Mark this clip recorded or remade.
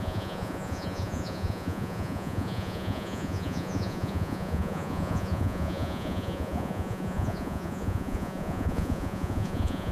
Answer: remade